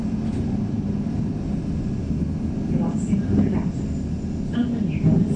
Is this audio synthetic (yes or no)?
no